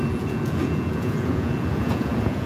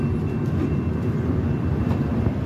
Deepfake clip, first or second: first